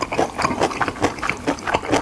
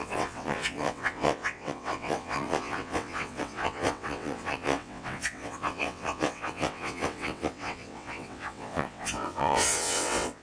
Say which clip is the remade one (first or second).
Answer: second